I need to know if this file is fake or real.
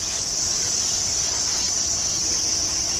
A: real